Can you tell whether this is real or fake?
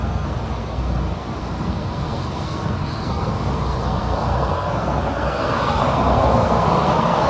fake